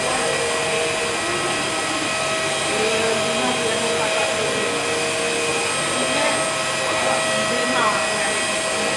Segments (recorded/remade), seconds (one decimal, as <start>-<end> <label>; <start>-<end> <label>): 0.0-9.0 recorded